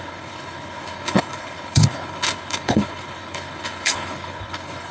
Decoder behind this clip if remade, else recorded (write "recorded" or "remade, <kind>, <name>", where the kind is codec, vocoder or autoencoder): remade, codec, HILCodec